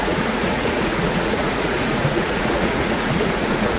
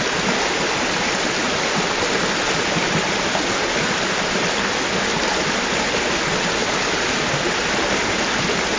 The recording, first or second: second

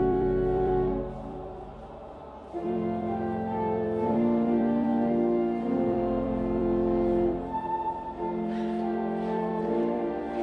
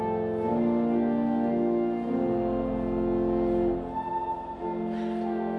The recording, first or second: second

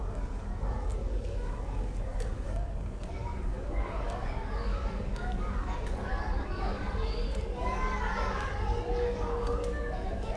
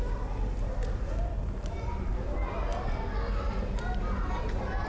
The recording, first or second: second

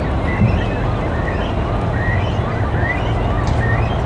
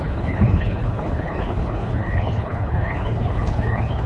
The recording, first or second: first